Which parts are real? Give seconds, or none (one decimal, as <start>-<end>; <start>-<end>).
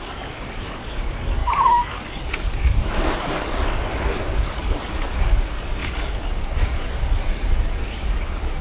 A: none